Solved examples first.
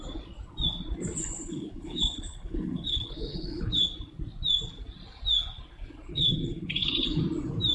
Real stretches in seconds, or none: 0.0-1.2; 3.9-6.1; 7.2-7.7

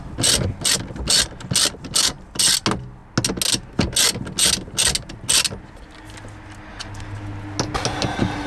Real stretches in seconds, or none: 0.0-8.5

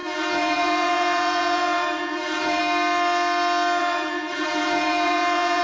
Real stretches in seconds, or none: 2.6-3.8

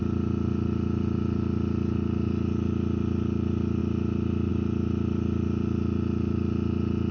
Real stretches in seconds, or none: 0.0-7.1

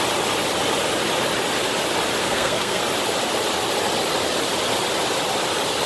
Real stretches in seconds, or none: 0.0-2.2; 2.8-5.9

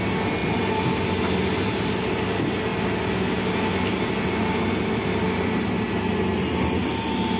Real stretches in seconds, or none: 0.0-7.4

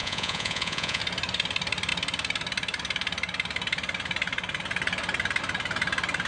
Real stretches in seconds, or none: 1.0-6.3

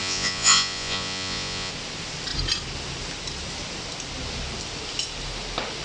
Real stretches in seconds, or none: 1.7-5.8